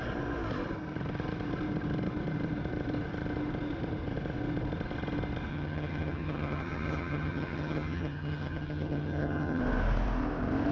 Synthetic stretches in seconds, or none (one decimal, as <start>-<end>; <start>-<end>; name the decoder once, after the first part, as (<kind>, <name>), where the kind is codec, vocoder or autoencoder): 5.5-9.6 (vocoder, HiFi-GAN)